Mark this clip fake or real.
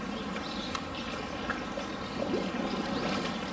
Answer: real